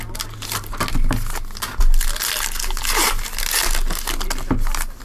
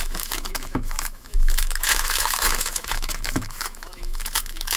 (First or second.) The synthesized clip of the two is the second